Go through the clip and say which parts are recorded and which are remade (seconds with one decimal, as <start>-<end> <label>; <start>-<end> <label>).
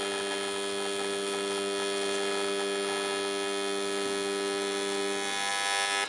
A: 0.0-6.1 recorded